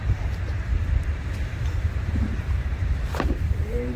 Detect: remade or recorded remade